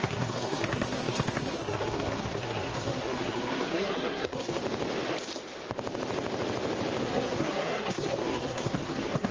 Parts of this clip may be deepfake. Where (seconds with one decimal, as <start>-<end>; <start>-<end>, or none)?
0.0-4.6; 7.0-9.3